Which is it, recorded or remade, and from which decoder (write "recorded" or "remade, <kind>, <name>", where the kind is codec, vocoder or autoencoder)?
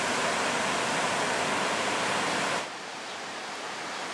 recorded